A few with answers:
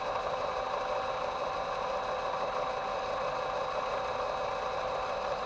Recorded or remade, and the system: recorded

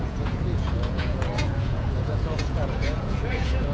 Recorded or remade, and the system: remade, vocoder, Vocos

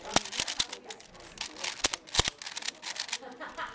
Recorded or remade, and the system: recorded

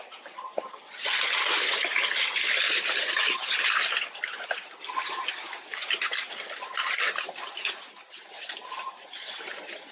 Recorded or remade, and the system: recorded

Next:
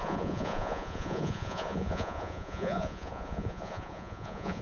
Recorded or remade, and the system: remade, vocoder, Vocos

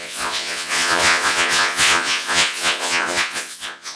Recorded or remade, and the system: remade, vocoder, Vocos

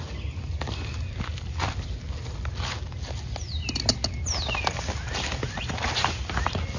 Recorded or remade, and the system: recorded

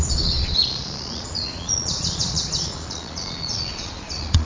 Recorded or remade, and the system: remade, vocoder, Vocos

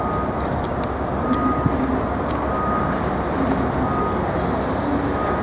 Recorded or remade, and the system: recorded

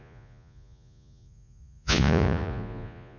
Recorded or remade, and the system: remade, vocoder, Vocos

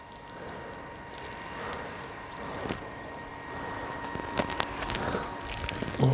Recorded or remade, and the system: recorded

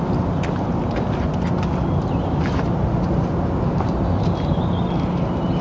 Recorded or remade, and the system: recorded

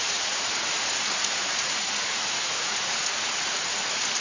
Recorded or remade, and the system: remade, vocoder, Vocos